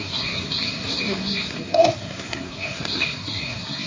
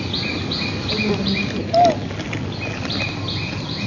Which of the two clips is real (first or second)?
second